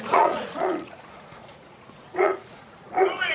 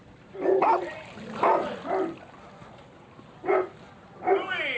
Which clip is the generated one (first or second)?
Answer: first